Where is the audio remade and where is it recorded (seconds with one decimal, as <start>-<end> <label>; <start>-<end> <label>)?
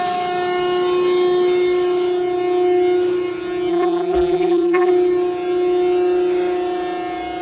0.0-3.7 recorded; 3.7-4.9 remade; 4.9-7.4 recorded